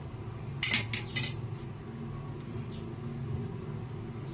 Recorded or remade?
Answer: recorded